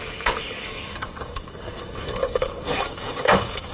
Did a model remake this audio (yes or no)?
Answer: yes